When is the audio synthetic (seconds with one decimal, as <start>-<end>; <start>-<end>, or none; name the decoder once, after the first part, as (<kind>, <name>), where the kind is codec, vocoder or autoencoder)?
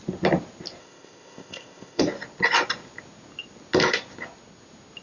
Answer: 0.8-2.0 (codec, ZipCodec)